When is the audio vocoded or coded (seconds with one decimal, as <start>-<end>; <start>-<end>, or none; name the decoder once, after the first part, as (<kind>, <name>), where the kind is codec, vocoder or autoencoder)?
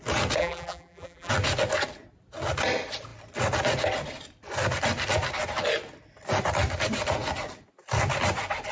0.4-1.3 (vocoder, BigVGAN v2)